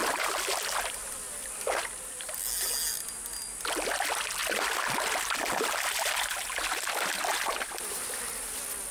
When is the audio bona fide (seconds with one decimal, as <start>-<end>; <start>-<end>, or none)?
0.0-7.3; 8.2-8.9